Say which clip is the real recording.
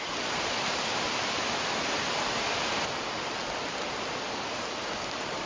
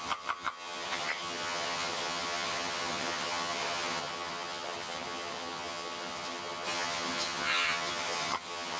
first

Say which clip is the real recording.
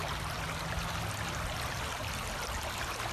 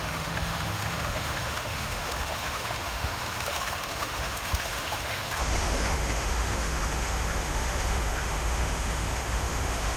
first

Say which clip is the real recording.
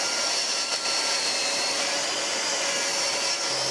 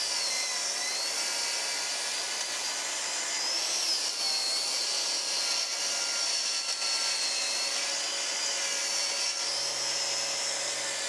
second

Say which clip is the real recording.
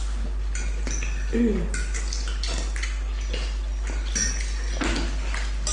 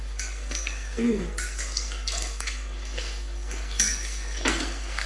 first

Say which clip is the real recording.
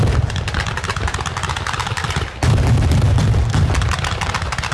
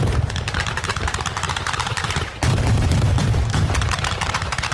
first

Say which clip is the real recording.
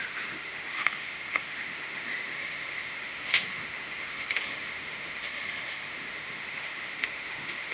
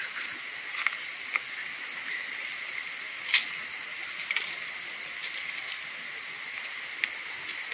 second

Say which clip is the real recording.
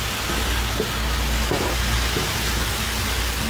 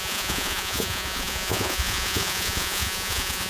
first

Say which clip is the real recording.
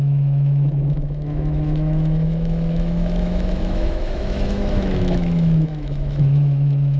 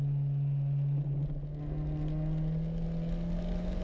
second